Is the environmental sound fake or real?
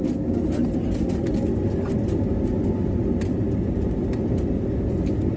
real